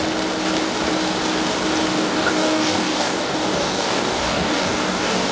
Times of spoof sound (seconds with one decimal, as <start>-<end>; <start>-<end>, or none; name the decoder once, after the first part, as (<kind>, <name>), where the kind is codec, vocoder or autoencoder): 1.9-5.3 (codec, DAC)